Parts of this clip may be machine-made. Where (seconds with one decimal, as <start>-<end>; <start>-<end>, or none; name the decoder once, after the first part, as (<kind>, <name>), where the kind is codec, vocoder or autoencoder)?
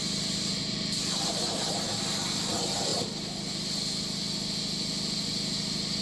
0.0-2.9 (vocoder, BigVGAN v2)